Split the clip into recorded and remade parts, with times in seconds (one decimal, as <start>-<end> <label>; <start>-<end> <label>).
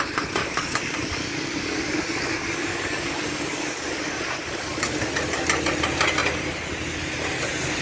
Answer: 0.0-0.4 recorded; 0.4-5.1 remade; 5.1-7.8 recorded